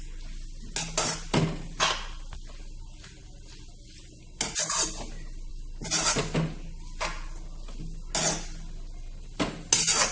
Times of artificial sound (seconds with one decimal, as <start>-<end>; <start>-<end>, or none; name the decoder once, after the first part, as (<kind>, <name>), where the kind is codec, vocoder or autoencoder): none